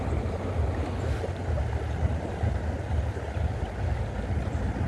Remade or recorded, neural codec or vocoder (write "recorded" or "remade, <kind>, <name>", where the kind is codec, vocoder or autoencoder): recorded